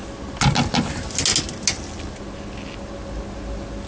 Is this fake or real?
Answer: real